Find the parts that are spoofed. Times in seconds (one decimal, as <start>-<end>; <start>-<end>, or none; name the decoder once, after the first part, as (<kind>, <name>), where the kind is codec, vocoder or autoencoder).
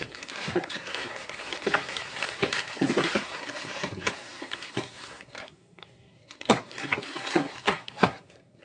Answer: 0.0-8.6 (codec, SNAC)